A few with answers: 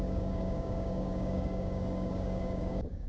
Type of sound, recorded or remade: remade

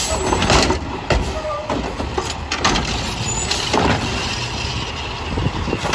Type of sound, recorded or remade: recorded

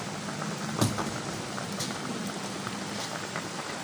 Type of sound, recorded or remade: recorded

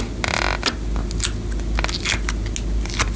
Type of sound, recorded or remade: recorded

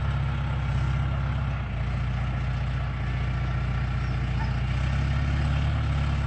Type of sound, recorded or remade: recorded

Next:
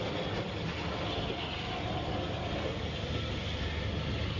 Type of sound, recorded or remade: recorded